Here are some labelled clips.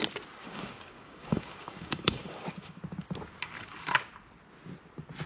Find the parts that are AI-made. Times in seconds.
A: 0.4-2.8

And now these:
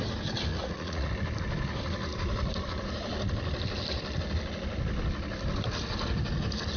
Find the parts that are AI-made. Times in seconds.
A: 0.5-1.1

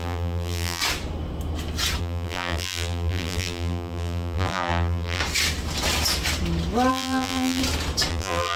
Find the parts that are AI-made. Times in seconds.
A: 0.0-0.8; 2.0-5.2; 6.9-7.6; 8.1-8.6

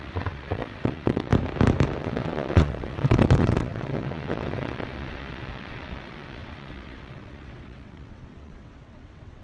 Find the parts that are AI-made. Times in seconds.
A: 0.0-1.3; 2.0-9.4

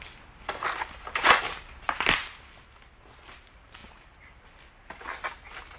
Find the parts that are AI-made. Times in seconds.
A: 3.8-5.8

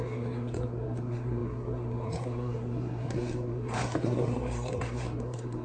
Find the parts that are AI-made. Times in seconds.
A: 0.0-5.6